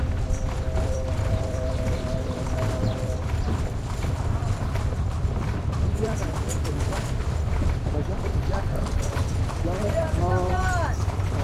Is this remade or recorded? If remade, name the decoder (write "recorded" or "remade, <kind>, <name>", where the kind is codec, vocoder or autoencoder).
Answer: remade, vocoder, BigVGAN v2